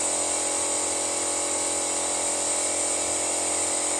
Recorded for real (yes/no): yes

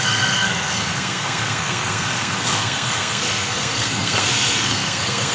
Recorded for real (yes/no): no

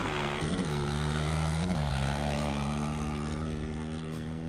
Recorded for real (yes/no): no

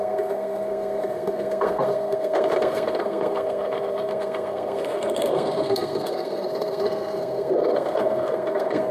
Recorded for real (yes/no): no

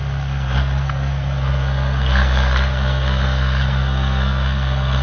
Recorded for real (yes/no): no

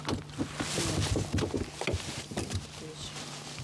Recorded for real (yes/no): yes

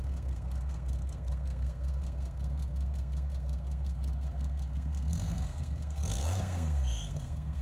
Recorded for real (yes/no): no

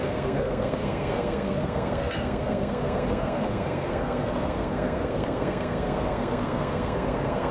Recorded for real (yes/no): no